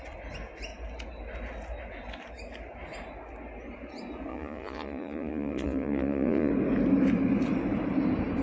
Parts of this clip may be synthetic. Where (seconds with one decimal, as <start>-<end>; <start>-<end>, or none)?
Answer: 4.3-6.5